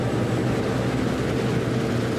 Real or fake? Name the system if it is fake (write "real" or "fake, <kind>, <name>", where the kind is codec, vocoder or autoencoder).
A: real